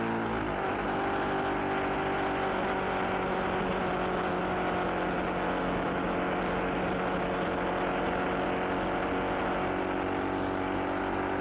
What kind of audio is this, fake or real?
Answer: real